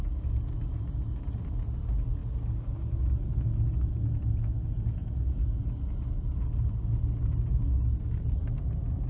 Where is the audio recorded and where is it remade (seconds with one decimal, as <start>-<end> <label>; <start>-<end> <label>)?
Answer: 0.0-9.1 recorded